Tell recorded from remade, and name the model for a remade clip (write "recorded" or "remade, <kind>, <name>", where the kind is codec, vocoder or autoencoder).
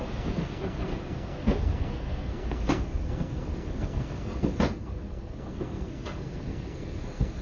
remade, codec, SNAC